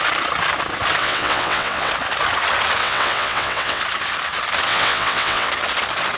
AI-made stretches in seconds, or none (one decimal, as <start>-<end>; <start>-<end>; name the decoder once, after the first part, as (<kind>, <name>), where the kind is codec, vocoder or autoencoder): 1.0-1.9 (vocoder, WaveNeXt); 2.8-3.8; 4.7-5.5